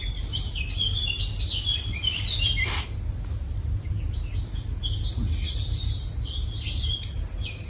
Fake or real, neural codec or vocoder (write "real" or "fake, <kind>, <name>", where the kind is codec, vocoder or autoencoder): real